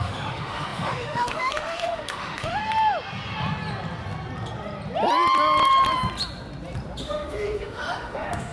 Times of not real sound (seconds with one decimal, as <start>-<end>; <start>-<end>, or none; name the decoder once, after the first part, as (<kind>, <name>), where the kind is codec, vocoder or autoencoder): 0.0-2.6 (autoencoder, DAC-VAE); 7.0-8.5

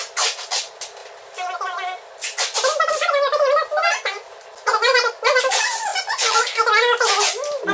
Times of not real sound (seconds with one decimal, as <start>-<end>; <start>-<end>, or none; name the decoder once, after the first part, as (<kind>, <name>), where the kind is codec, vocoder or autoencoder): none

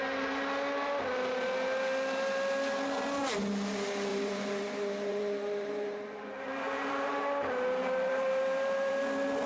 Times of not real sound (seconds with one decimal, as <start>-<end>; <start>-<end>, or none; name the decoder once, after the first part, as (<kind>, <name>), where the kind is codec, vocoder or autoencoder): 4.1-8.9 (vocoder, BigVGAN v2)

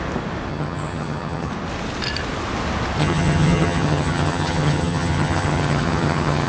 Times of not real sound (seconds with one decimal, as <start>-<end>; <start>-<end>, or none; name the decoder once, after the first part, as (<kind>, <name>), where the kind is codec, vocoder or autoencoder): 0.5-1.5 (vocoder, HiFi-GAN); 3.0-6.5

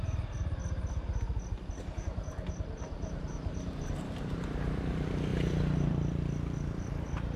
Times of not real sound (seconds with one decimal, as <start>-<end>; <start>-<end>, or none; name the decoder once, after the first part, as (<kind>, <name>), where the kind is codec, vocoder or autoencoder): 0.0-0.6 (vocoder, BigVGAN v2); 4.0-7.4

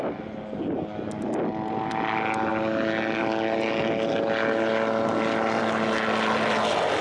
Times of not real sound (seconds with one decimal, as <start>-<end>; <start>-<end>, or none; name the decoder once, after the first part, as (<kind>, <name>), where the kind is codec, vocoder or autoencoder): none

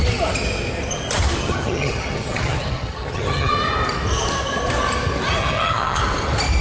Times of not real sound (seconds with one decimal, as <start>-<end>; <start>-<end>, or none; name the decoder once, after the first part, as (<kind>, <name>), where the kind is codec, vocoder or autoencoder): 1.4-3.5 (vocoder, HiFi-GAN); 5.4-6.0